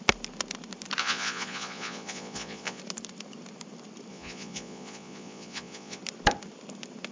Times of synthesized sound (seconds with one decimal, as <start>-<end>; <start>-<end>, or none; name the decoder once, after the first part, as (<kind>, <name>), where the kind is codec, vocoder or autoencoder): 1.0-2.8 (vocoder, Vocos); 4.1-6.0